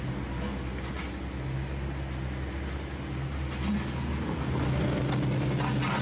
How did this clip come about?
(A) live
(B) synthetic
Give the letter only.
A